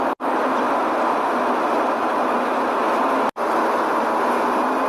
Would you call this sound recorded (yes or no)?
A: no